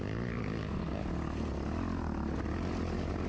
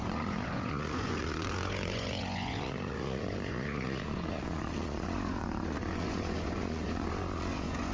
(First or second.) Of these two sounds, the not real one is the second